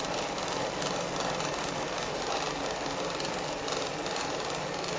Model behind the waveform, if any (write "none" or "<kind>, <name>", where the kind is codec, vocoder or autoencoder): none